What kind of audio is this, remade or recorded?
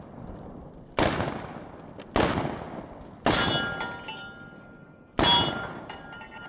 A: recorded